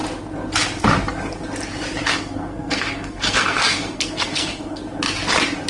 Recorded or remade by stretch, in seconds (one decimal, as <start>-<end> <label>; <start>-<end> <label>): 0.0-2.1 recorded; 2.1-4.8 remade; 4.8-5.7 recorded

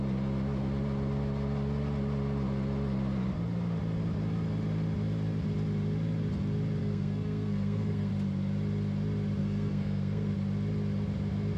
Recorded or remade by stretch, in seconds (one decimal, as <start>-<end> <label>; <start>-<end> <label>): 0.0-6.8 recorded; 6.8-8.1 remade; 8.1-9.4 recorded; 9.4-10.3 remade; 10.3-11.6 recorded

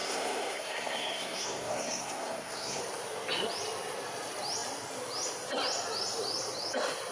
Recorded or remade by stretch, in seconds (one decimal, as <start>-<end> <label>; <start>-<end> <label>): 0.0-2.8 remade; 2.8-7.1 recorded

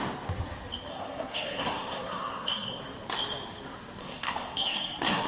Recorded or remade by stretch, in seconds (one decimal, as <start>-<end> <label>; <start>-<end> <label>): 0.0-0.9 recorded; 0.9-2.8 remade; 2.8-4.0 recorded; 4.0-5.3 remade